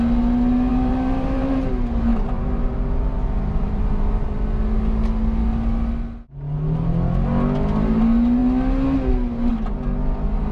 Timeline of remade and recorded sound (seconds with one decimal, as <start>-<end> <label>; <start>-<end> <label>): 0.0-0.7 recorded; 0.7-1.7 remade; 1.7-2.1 recorded; 2.1-4.4 remade; 4.4-10.5 recorded